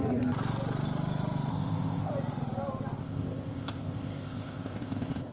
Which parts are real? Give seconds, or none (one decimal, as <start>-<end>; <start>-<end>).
0.0-1.5; 2.1-3.0